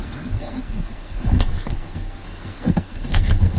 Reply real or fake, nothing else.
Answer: fake